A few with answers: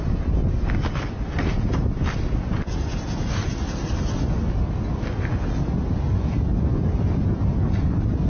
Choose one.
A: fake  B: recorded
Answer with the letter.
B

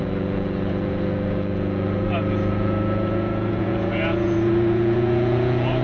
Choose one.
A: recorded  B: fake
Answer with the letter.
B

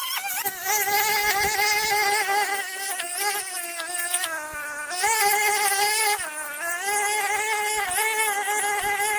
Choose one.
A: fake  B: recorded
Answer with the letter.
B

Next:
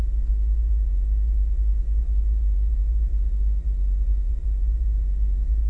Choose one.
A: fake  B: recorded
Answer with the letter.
A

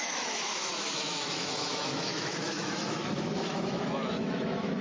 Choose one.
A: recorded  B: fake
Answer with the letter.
B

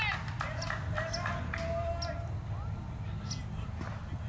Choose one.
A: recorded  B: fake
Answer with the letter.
A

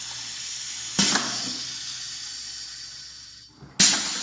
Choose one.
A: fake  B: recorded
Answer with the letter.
B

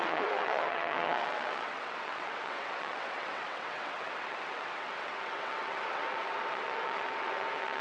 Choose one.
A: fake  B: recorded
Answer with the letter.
A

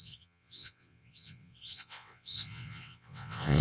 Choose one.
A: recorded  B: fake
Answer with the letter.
B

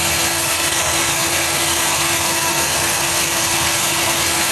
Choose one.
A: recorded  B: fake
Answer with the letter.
B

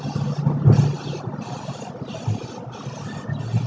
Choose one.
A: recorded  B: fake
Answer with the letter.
A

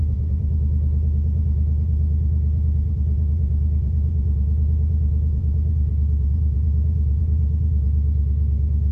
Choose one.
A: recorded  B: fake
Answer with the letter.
B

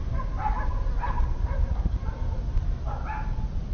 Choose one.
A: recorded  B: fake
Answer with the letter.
A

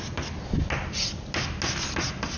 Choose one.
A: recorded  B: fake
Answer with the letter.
A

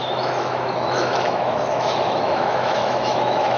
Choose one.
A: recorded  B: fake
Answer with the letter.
B